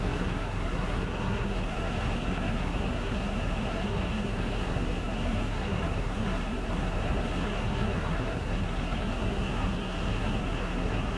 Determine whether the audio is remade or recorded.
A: remade